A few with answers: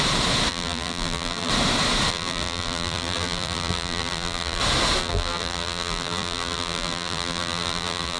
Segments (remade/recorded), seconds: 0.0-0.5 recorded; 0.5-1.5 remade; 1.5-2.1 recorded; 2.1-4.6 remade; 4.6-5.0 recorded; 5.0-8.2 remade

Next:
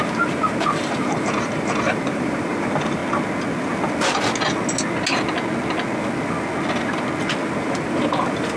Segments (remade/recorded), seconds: 0.0-3.0 remade; 3.0-7.6 recorded; 7.6-8.6 remade